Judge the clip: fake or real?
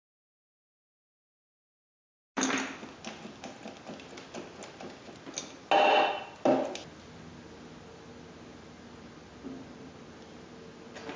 real